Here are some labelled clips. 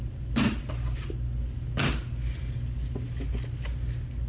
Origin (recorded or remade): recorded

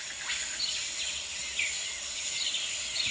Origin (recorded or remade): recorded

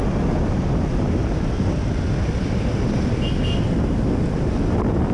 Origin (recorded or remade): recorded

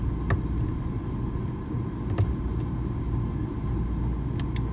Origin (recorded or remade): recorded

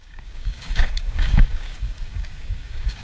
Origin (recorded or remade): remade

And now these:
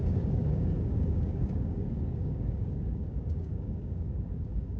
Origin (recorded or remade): remade